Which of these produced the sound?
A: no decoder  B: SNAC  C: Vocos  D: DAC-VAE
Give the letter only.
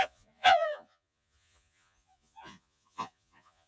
C